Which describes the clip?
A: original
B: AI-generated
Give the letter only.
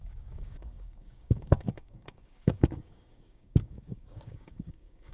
B